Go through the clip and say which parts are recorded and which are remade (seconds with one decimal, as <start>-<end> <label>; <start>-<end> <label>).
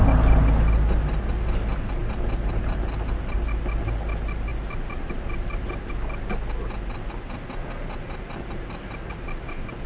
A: 0.0-9.9 recorded